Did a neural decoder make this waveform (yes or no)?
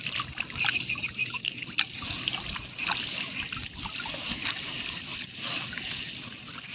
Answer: no